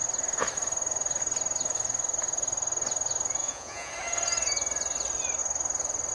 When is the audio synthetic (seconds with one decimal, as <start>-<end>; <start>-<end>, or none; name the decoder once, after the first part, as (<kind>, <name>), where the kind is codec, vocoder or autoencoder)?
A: 3.4-3.9 (vocoder, Vocos)